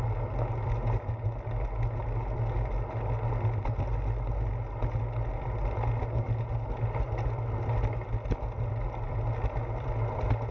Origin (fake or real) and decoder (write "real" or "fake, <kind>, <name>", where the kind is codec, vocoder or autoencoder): real